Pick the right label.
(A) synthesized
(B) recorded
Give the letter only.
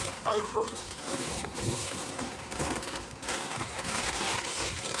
A